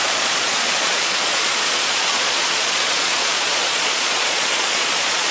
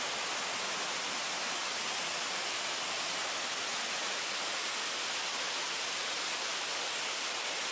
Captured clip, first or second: second